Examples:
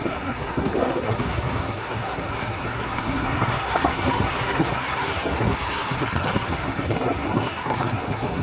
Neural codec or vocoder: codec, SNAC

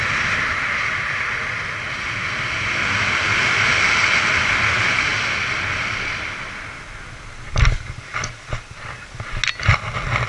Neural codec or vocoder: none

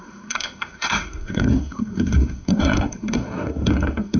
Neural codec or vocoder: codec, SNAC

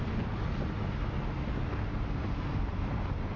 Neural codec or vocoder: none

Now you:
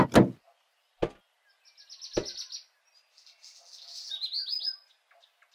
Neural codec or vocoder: none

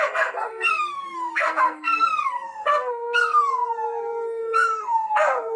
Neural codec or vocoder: codec, SNAC